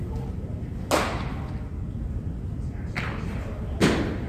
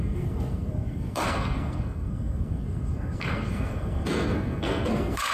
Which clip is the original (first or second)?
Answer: first